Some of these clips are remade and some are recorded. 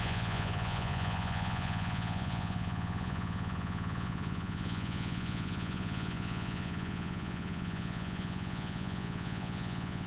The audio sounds remade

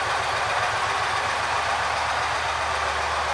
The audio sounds recorded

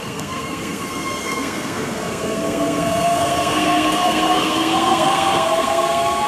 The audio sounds remade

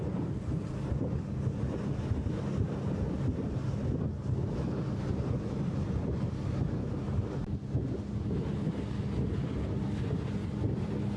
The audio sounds recorded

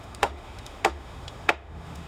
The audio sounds remade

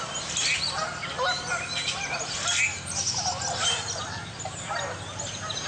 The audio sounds recorded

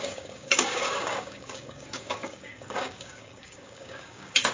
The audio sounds remade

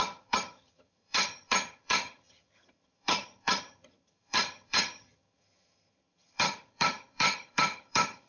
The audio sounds remade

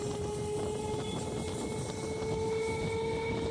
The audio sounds recorded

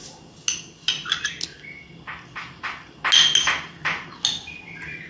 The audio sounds recorded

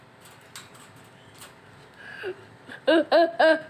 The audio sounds recorded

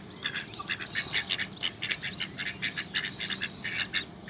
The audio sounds recorded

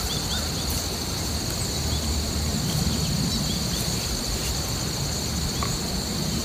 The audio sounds recorded